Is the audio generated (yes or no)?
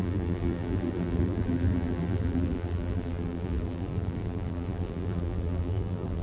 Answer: yes